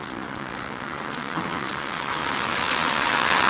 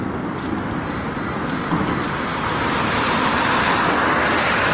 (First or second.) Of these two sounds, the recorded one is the second